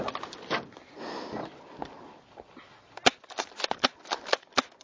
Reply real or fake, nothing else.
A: real